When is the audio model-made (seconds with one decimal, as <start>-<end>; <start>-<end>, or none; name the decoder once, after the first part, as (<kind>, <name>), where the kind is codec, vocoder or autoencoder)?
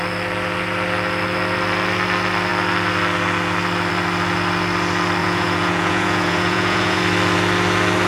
5.2-7.0 (vocoder, Vocos)